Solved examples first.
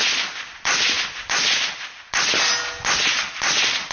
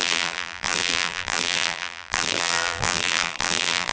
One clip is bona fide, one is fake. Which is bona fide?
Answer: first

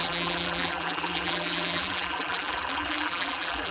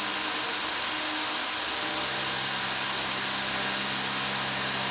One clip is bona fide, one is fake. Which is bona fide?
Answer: second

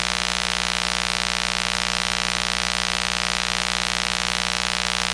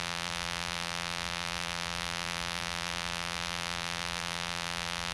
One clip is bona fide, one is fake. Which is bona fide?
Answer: first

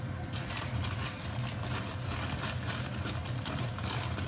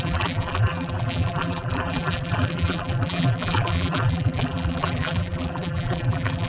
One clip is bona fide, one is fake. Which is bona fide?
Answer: first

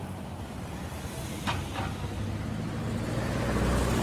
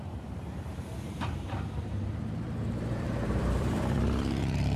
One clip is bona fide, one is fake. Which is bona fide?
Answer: first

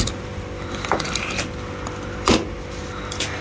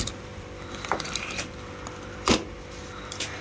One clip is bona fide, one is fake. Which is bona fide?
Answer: first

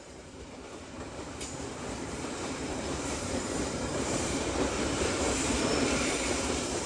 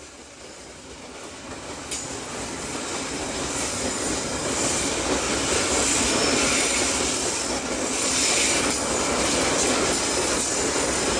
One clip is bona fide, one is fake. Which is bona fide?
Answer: second